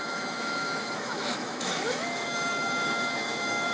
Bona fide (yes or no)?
no